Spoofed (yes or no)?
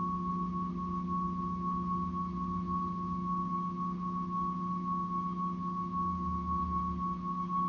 no